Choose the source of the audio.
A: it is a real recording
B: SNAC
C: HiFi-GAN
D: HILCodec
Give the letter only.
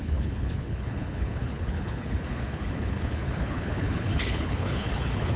D